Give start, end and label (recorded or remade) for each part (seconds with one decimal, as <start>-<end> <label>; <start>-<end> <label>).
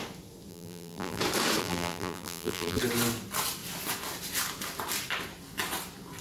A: 0.0-0.5 recorded; 0.5-1.2 remade; 1.2-1.6 recorded; 1.6-2.8 remade; 2.8-6.2 recorded